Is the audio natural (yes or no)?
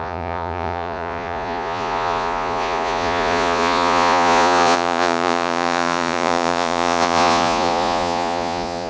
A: no